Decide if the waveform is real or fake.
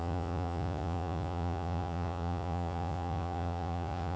fake